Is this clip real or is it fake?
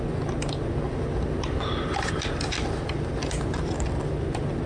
real